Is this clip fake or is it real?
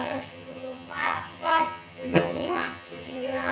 fake